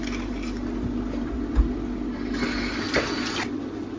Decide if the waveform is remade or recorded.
recorded